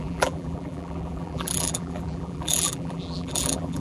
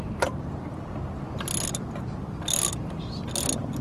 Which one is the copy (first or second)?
first